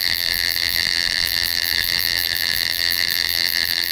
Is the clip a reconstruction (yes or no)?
yes